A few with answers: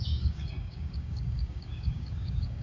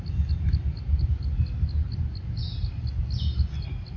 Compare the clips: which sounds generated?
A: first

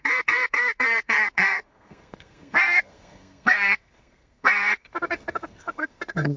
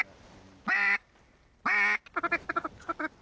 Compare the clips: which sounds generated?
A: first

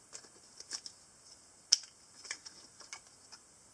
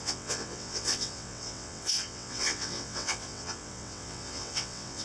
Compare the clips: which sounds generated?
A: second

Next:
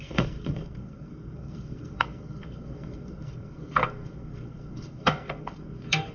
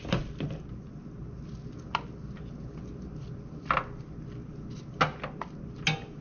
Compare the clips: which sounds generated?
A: first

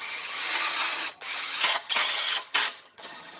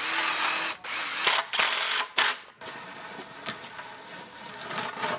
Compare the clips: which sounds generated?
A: first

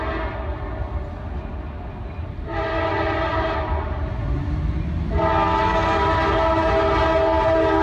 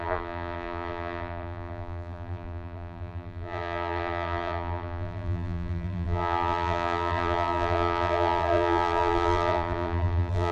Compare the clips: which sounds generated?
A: second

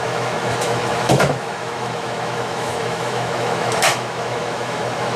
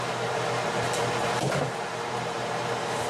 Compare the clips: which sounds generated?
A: first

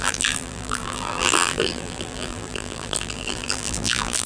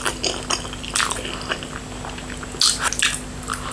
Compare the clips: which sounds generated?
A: first